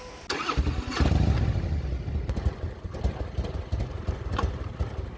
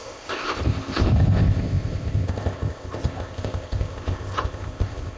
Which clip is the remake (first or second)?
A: second